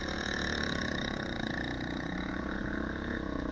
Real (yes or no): no